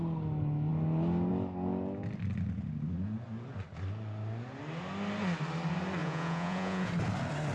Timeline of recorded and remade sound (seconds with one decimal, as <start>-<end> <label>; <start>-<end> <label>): 0.0-6.0 recorded; 6.0-6.9 remade; 6.9-7.5 recorded